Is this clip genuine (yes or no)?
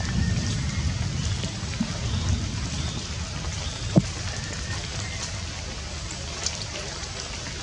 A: yes